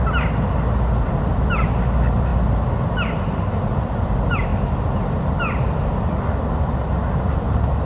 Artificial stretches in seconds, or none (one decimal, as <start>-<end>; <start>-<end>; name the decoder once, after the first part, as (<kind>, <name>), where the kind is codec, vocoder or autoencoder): 2.3-4.1 (vocoder, BigVGAN v2)